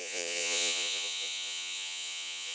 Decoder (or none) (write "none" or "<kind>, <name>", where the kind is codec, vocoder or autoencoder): vocoder, Vocos